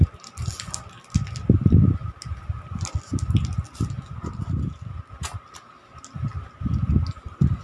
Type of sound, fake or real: real